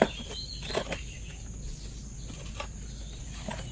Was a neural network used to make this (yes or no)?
no